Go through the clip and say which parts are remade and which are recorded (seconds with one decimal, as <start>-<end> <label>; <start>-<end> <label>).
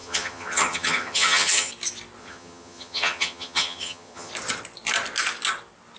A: 0.0-1.7 remade; 1.7-2.2 recorded; 2.2-4.3 remade; 4.3-6.0 recorded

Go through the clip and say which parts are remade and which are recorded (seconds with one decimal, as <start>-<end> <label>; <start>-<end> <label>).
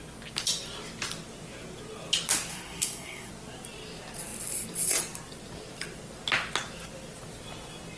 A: 0.0-2.5 recorded; 2.5-3.3 remade; 3.3-8.0 recorded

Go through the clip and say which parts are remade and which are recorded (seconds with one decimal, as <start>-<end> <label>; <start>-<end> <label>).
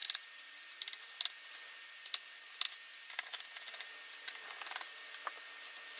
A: 0.0-6.0 recorded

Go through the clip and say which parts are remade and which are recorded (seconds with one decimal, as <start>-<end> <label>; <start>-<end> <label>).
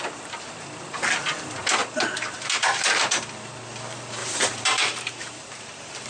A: 0.0-1.8 recorded; 1.8-3.2 remade; 3.2-4.2 recorded; 4.2-6.1 remade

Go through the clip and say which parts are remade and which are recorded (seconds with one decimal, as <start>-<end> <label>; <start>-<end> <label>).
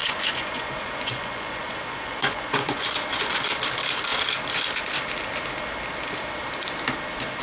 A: 0.0-3.6 remade; 3.6-7.4 recorded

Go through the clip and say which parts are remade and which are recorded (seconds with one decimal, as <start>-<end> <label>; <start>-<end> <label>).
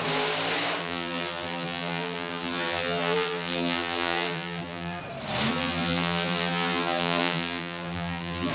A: 0.0-0.8 recorded; 0.8-5.0 remade; 5.0-5.5 recorded; 5.5-8.5 remade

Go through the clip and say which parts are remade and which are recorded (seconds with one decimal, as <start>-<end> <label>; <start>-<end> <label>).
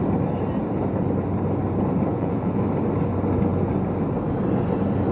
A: 0.0-2.1 recorded; 2.1-2.6 remade; 2.6-5.1 recorded